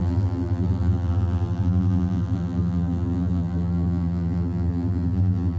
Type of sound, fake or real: fake